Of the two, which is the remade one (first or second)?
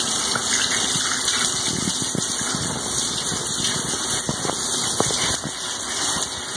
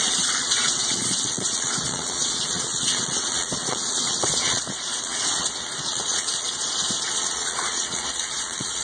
second